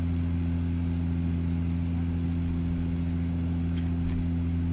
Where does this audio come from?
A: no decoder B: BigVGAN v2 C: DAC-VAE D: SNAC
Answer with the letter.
A